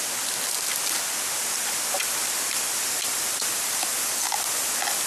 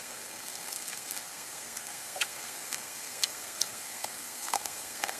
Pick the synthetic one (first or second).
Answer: second